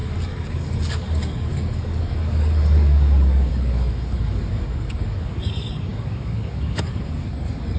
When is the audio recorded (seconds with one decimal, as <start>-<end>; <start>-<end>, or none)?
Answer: none